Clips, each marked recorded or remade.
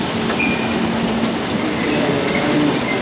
recorded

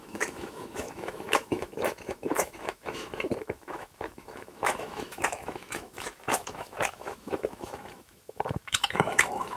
remade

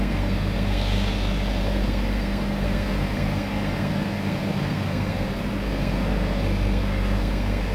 remade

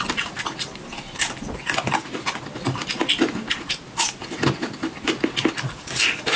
recorded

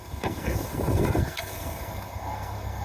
remade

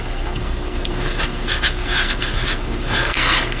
remade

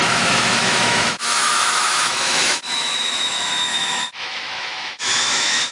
remade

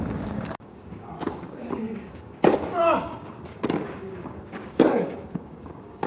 remade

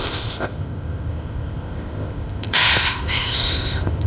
remade